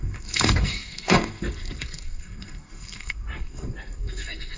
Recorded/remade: remade